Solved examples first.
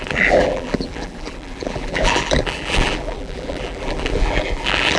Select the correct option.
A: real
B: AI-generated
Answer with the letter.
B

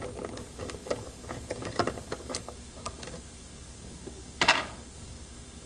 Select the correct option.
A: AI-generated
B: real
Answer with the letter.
A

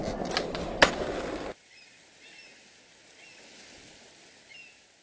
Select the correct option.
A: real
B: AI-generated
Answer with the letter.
A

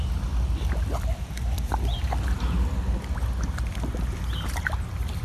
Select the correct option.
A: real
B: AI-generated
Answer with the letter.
A